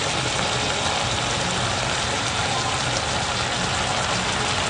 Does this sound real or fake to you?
real